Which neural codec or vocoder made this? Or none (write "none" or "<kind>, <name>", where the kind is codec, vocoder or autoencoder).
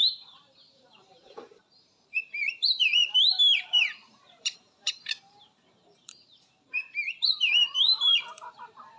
vocoder, BigVGAN v2